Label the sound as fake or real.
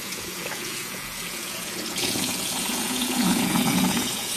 fake